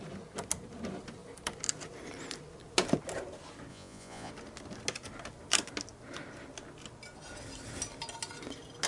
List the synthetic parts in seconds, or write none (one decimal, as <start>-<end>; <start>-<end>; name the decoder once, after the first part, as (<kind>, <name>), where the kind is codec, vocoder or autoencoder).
3.7-4.3 (vocoder, Vocos)

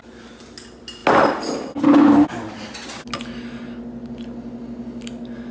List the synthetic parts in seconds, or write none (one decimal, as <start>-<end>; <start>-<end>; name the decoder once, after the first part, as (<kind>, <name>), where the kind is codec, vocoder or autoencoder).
none

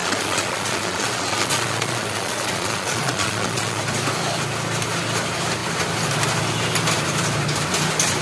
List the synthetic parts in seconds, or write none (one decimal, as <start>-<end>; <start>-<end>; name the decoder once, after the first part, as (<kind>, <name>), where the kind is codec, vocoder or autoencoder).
0.0-3.8 (vocoder, Vocos)